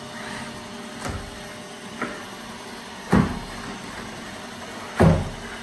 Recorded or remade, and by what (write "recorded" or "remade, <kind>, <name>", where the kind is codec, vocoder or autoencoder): recorded